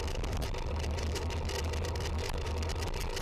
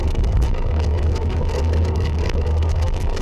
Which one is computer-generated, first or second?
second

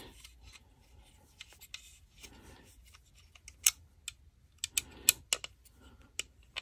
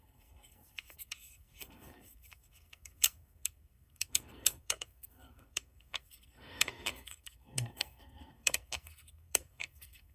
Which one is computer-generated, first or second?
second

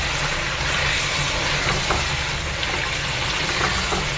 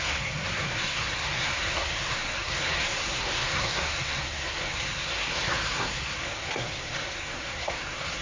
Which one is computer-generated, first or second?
second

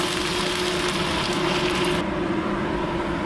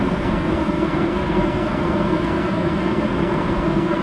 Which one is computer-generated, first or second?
second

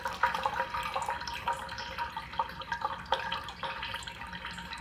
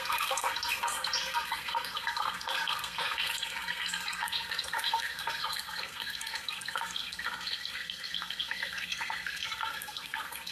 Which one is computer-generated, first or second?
second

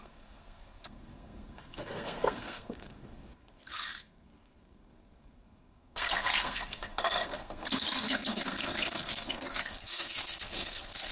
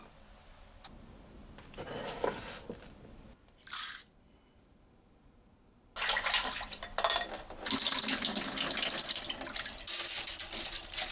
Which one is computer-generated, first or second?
first